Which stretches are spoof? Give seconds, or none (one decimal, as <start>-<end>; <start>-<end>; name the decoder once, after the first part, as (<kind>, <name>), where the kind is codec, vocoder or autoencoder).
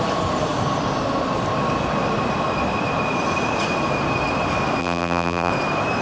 4.8-5.5 (vocoder, BigVGAN v2)